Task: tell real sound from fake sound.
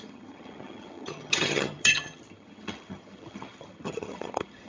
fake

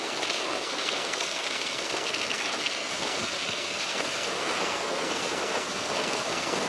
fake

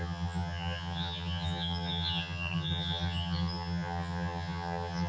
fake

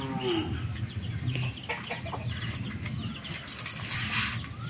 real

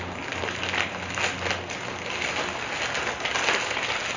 real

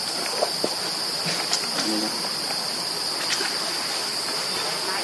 real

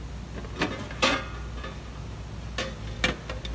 real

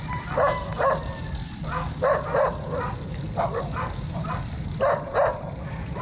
real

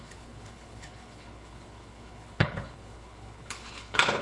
fake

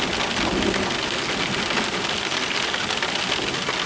real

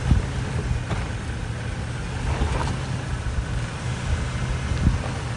real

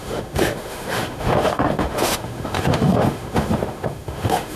fake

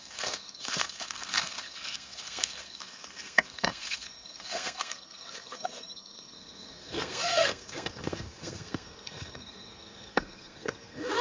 fake